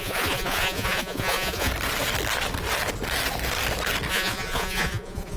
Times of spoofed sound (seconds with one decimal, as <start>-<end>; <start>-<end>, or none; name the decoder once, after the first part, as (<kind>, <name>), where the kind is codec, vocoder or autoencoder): 0.0-1.7 (vocoder, Vocos); 4.1-5.4